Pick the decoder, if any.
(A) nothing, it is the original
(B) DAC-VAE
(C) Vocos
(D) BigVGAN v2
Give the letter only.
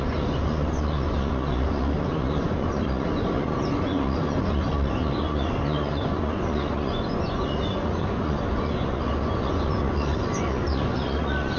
C